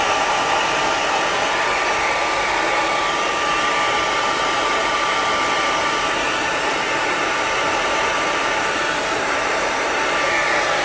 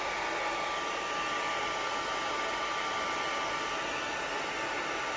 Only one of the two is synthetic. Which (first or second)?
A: first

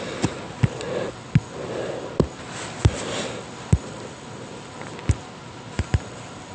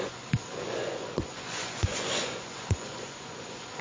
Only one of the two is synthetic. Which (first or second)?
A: second